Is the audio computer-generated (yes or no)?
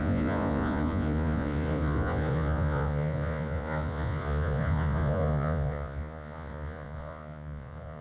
yes